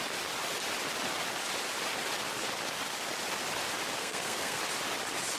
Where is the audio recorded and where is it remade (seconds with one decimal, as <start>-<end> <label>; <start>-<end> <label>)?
0.0-4.0 recorded; 4.0-4.6 remade; 4.6-5.4 recorded